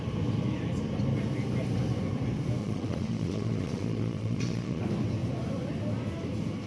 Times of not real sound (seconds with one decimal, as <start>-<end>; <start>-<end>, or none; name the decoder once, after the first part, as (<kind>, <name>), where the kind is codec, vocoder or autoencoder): 2.6-4.8 (vocoder, Vocos)